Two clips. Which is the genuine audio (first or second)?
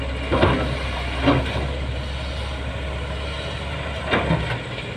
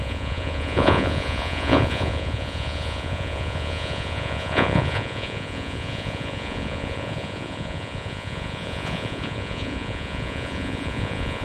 first